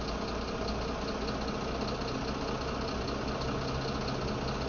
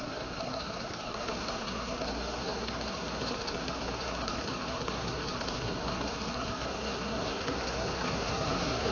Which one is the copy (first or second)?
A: second